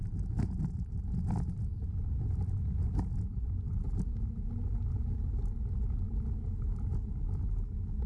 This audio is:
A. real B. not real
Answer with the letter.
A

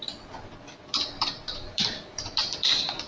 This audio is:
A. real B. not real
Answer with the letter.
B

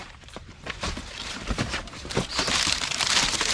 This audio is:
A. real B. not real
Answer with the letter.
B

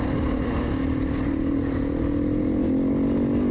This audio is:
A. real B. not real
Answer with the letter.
A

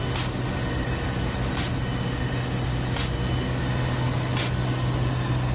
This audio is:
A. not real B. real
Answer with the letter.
B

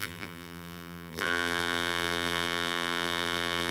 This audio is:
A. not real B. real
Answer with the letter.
A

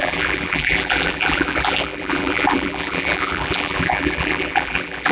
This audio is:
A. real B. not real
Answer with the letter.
B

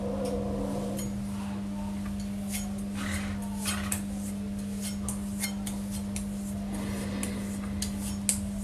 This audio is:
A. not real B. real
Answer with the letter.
B